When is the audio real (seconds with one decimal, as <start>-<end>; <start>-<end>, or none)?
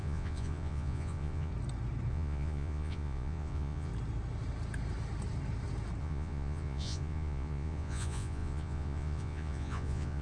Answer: 1.5-2.1; 3.9-6.0